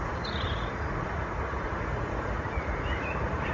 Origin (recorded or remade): remade